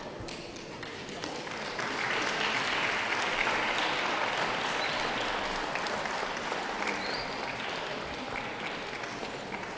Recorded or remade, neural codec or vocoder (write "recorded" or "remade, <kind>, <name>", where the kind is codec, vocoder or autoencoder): recorded